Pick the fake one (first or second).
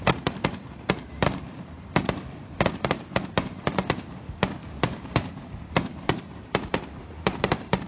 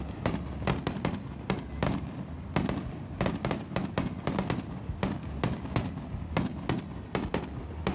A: first